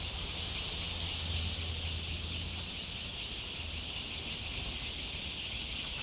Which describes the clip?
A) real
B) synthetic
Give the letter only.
A